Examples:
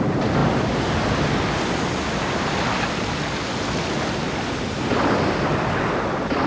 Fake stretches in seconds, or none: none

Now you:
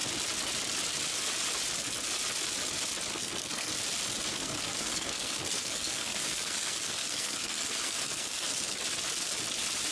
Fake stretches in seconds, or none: 3.1-3.7 (codec, SNAC); 4.3-8.8

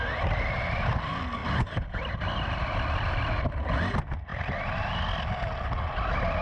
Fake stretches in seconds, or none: 1.4-2.2 (vocoder, BigVGAN v2)